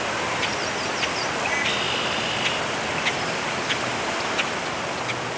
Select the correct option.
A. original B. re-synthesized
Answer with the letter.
A